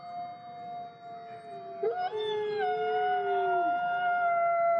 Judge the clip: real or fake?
real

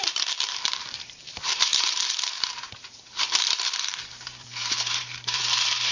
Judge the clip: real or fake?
fake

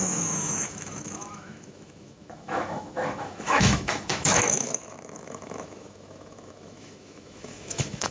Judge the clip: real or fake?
fake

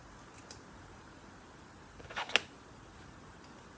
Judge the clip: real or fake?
real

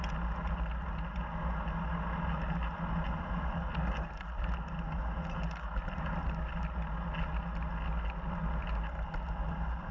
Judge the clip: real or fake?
real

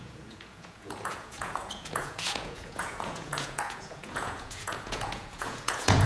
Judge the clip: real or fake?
fake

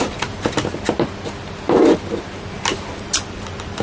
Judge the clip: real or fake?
real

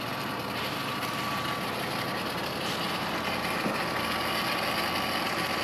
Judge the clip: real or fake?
real